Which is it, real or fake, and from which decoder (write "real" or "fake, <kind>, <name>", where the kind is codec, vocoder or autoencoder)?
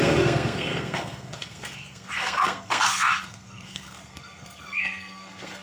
fake, codec, SNAC